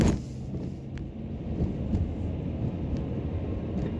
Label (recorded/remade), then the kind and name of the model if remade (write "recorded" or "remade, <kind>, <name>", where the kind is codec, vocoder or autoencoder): recorded